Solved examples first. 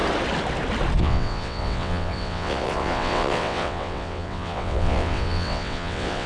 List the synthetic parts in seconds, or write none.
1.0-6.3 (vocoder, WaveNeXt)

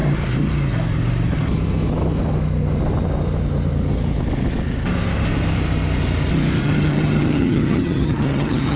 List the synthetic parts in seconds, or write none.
6.6-8.8 (vocoder, HiFi-GAN)

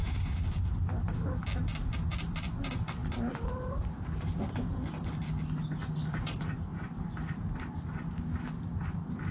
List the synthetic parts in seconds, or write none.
none

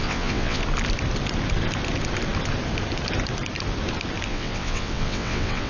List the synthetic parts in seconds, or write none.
0.0-0.6 (vocoder, WaveNeXt); 4.3-5.7